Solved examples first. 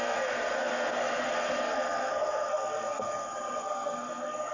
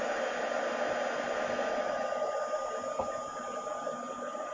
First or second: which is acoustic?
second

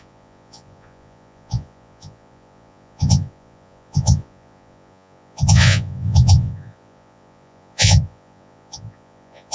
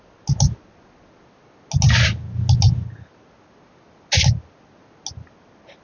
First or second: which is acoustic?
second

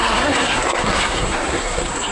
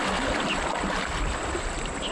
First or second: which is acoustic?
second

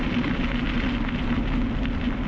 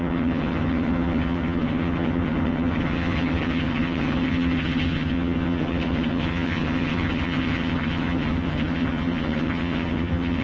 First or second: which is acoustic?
first